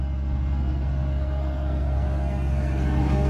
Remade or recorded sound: remade